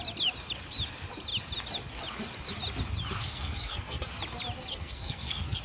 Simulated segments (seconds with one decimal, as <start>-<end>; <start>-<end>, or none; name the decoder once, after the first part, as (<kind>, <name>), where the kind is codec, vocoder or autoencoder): 3.2-4.1 (codec, SNAC); 4.7-5.6